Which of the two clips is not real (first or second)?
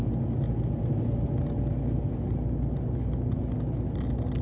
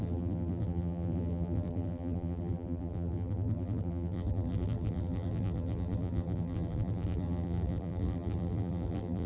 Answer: second